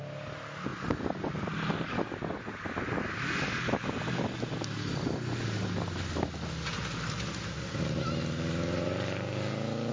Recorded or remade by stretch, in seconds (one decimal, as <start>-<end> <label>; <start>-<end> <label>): 0.0-9.9 recorded